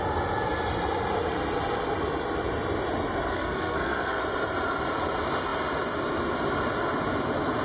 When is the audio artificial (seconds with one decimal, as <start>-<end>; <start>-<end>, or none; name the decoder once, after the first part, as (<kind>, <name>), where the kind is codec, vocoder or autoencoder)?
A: 3.3-4.2 (codec, SNAC)